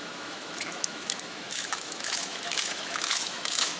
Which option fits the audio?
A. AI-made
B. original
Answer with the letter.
A